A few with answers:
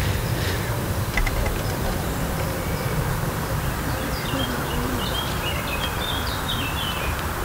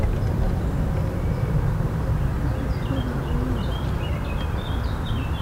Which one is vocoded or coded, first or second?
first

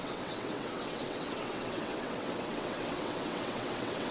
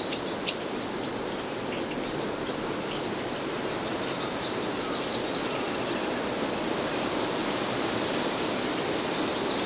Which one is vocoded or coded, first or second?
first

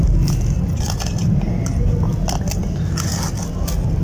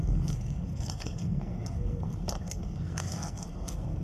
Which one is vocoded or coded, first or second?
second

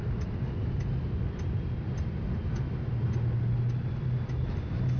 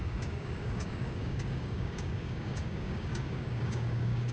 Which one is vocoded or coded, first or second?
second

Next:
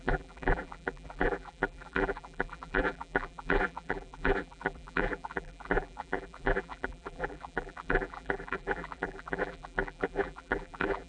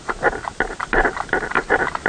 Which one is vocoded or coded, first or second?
first